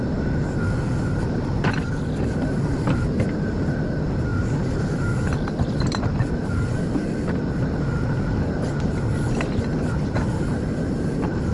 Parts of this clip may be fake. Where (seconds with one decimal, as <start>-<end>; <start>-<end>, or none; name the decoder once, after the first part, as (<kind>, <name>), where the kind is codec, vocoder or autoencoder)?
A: none